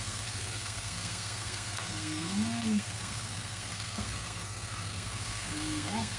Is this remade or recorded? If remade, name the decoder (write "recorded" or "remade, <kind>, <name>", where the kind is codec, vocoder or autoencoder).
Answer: remade, codec, SNAC